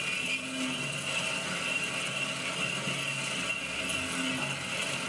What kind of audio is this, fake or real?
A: real